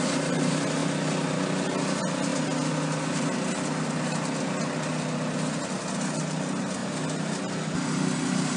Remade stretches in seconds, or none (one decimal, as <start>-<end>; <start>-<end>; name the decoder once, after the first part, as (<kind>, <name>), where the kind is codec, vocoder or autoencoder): none